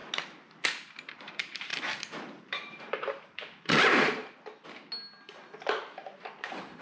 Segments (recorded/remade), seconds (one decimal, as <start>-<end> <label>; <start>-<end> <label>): 0.0-1.1 recorded; 1.1-1.7 remade; 1.7-2.4 recorded; 2.4-4.2 remade; 4.2-6.2 recorded; 6.2-6.8 remade